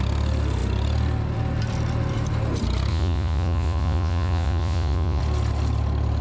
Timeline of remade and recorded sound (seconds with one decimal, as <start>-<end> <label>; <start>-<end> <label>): 0.0-2.9 recorded; 2.9-5.2 remade; 5.2-6.2 recorded